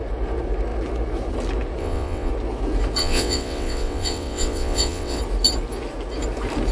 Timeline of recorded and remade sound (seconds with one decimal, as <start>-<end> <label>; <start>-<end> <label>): 0.0-1.8 recorded; 1.8-2.3 remade; 2.3-3.0 recorded; 3.0-5.2 remade; 5.2-6.7 recorded